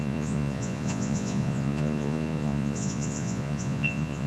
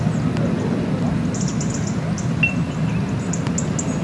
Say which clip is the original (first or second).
second